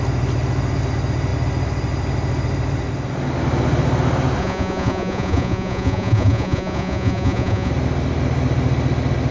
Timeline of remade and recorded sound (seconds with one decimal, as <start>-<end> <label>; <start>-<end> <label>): 0.0-4.4 recorded; 4.4-7.7 remade; 7.7-9.3 recorded